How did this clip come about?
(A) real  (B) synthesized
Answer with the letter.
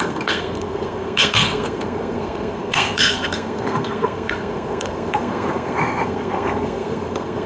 B